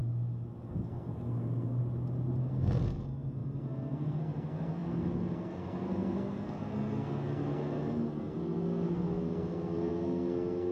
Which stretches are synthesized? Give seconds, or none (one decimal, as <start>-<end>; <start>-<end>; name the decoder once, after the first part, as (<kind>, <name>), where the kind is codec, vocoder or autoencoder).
0.7-1.8 (codec, SNAC); 2.4-10.7